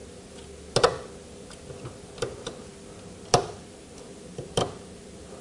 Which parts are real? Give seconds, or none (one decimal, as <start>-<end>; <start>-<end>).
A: 0.0-5.4